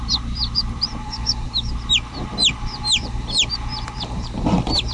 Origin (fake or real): fake